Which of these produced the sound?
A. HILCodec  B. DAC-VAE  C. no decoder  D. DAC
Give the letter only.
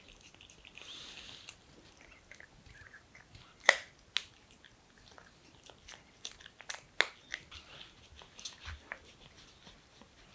C